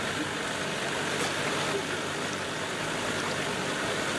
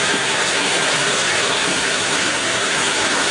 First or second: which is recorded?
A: first